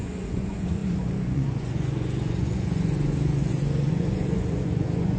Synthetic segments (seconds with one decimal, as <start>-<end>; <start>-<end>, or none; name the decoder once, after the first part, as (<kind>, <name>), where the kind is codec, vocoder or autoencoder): 0.0-5.2 (vocoder, Vocos)